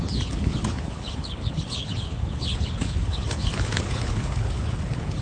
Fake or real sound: fake